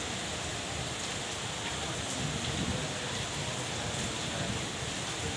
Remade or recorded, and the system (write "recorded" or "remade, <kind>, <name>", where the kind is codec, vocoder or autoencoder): recorded